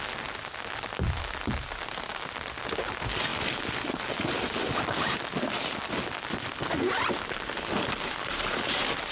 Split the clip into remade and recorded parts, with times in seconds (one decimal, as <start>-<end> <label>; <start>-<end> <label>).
0.0-9.1 recorded